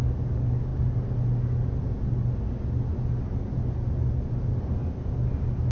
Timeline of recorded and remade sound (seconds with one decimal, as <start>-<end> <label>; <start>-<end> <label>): 0.0-5.7 recorded